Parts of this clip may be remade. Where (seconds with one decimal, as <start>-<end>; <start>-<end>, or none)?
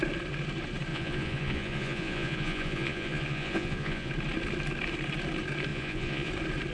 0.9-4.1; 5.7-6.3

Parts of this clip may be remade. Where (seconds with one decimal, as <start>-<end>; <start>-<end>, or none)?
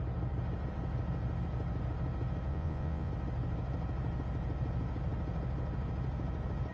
2.5-3.1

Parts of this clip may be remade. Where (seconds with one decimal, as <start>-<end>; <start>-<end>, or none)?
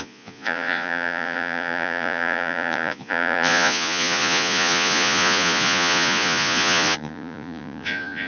0.0-8.3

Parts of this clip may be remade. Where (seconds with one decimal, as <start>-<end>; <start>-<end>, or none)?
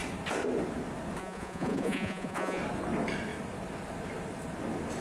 1.2-2.6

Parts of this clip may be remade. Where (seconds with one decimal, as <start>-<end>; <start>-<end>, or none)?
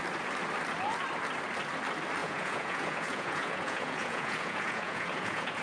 2.2-5.6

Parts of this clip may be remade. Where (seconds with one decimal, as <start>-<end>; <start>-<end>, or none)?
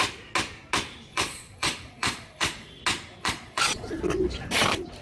1.1-2.8; 3.2-3.9